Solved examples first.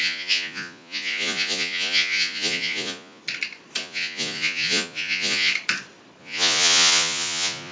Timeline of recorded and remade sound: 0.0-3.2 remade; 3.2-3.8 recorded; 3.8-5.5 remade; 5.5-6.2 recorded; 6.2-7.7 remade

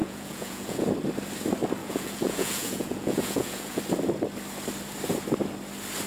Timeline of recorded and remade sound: 0.0-0.9 remade; 0.9-1.8 recorded; 1.8-3.8 remade; 3.8-6.1 recorded

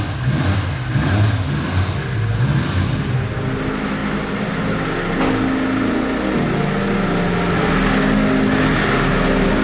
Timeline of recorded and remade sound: 0.0-9.6 recorded

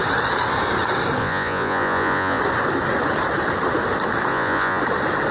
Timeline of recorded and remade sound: 0.0-1.2 recorded; 1.2-2.4 remade; 2.4-4.3 recorded; 4.3-4.8 remade; 4.8-5.3 recorded

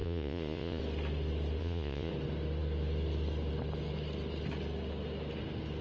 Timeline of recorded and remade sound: 0.0-0.8 remade; 0.8-1.6 recorded; 1.6-2.1 remade; 2.1-5.8 recorded

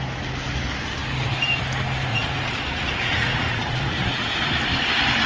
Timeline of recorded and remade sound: 0.0-2.1 recorded; 2.1-4.4 remade; 4.4-5.3 recorded

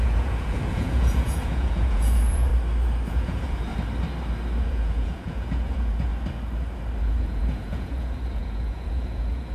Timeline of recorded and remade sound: 0.0-2.5 remade; 2.5-3.1 recorded; 3.1-3.7 remade; 3.7-4.6 recorded; 4.6-6.1 remade; 6.1-7.0 recorded; 7.0-9.5 remade

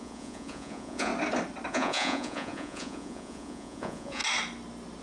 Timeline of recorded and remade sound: 0.0-1.1 remade; 1.1-1.7 recorded; 1.7-4.2 remade; 4.2-5.0 recorded